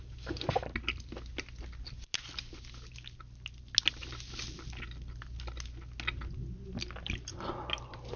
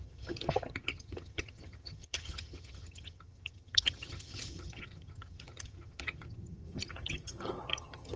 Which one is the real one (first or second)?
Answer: first